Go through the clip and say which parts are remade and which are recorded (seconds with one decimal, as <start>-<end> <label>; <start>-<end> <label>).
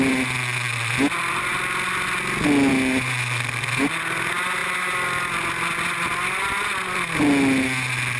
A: 0.0-8.2 recorded